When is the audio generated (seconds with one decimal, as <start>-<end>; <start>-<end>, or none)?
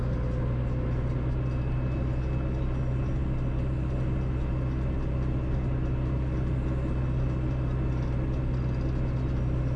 none